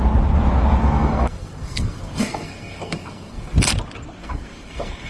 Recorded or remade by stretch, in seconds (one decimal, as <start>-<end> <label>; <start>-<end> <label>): 0.0-0.8 recorded; 0.8-3.5 remade; 3.5-4.2 recorded; 4.2-5.1 remade